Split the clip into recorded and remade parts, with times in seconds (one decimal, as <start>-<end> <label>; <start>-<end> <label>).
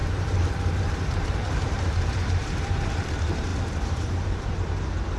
0.0-3.1 remade; 3.1-3.5 recorded; 3.5-4.4 remade; 4.4-5.2 recorded